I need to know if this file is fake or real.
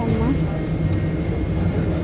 real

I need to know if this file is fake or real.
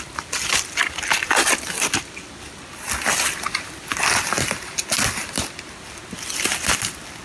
real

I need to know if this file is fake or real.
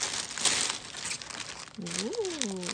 real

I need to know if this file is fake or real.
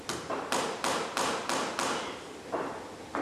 real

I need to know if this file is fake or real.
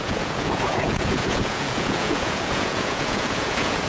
fake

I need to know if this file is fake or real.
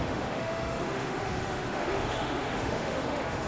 fake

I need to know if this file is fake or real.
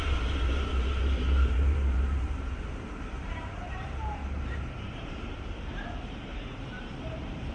fake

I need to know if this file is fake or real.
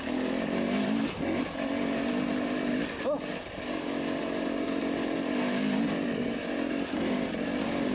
fake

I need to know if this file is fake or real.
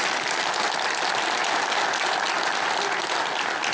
real